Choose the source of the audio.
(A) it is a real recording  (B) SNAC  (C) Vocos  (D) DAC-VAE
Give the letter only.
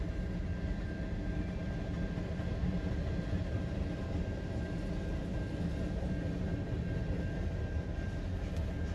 A